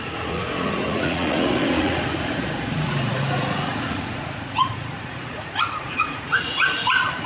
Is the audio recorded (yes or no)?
no